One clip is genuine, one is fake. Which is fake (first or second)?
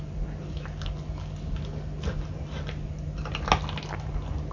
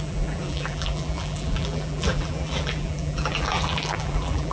second